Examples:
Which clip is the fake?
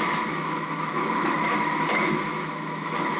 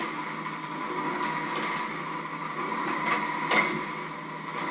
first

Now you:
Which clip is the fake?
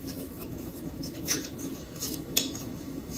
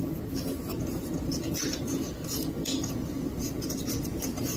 first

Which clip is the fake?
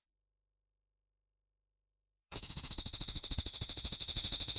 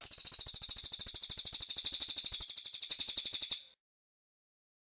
first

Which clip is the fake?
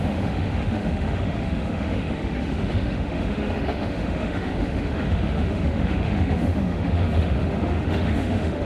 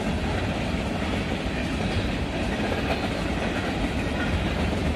first